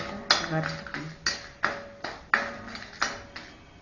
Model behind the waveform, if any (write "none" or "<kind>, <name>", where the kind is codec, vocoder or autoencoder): none